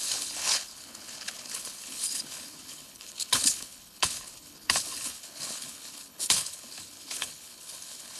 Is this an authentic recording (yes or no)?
no